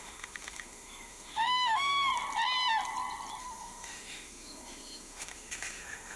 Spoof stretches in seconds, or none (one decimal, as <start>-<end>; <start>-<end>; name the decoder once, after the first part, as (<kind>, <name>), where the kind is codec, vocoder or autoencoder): 0.0-2.1 (autoencoder, DAC-VAE); 3.4-6.2

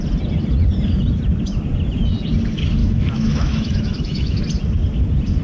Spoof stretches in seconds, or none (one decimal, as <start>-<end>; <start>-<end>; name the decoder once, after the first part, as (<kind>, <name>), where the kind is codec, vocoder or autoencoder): 2.8-4.4 (autoencoder, DAC-VAE)

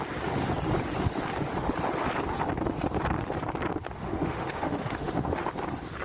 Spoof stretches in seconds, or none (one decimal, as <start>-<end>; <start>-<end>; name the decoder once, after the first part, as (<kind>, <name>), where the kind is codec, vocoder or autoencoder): 4.0-5.5 (autoencoder, DAC-VAE)

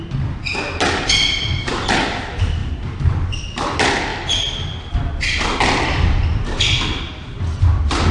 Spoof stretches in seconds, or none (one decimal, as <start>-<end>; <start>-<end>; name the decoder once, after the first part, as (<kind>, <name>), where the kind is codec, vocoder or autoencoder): none

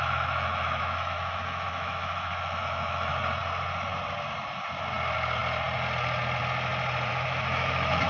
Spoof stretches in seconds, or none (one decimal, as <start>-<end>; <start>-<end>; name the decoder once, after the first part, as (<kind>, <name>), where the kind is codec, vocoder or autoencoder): 0.0-3.1 (autoencoder, DAC-VAE); 7.1-8.1